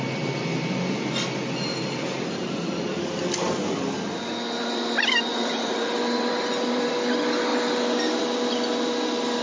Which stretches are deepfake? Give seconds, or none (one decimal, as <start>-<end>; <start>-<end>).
1.7-3.0; 5.3-6.9